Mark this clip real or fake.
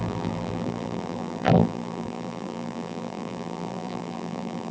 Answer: fake